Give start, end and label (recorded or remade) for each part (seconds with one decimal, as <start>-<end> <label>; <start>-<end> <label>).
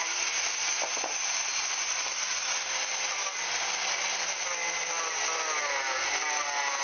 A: 0.0-6.8 recorded